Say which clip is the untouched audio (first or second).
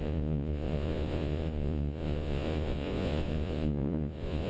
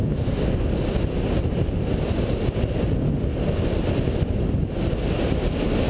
second